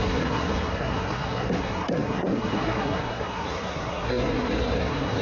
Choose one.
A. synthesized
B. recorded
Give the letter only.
A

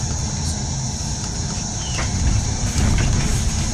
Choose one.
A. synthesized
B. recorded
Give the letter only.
B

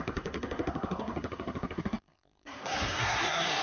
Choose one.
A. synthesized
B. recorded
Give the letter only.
A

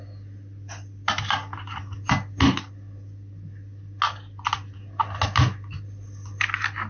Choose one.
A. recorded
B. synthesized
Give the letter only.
A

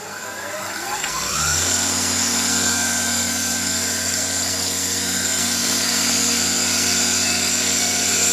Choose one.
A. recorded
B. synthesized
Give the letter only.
B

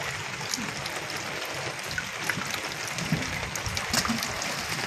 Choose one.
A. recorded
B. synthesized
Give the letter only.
A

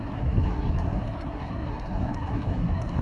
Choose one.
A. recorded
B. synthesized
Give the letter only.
B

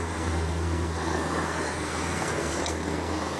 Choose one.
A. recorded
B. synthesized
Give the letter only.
B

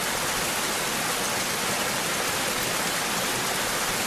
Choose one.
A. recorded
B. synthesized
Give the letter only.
A